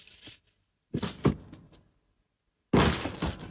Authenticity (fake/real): real